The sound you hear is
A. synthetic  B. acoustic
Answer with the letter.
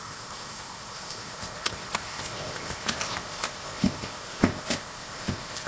A